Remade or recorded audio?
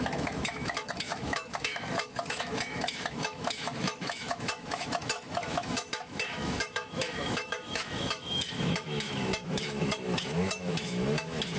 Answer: remade